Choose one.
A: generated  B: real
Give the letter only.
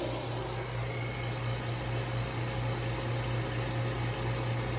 B